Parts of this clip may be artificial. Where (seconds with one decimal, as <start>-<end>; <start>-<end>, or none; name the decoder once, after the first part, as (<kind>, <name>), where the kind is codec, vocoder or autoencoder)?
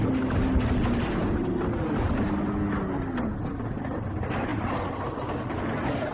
none